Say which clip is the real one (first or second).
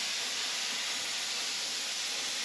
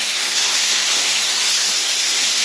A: first